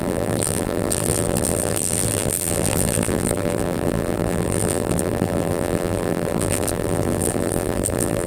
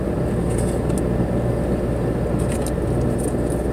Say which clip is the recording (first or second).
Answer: second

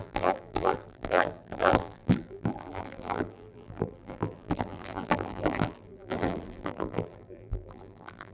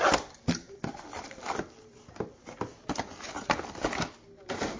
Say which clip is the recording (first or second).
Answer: second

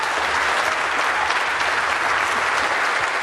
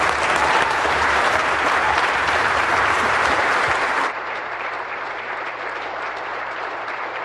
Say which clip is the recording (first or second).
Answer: first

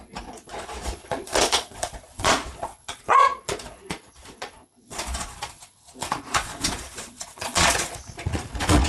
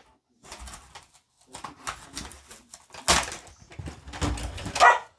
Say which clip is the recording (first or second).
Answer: second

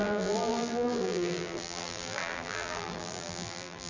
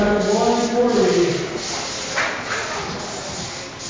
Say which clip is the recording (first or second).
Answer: second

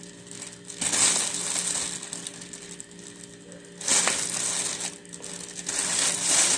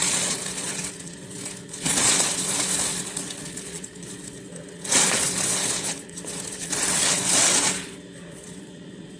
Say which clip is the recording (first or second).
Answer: first